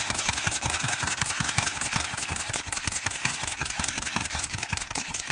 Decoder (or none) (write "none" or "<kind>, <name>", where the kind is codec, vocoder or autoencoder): codec, SNAC